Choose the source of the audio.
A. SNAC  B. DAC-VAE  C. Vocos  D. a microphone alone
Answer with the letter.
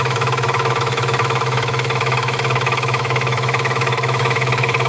B